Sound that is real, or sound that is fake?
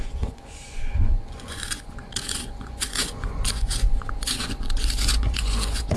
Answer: fake